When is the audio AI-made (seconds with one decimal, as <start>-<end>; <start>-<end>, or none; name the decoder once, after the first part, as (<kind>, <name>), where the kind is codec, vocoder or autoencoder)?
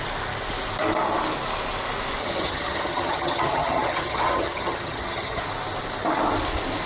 2.2-5.4 (vocoder, HiFi-GAN)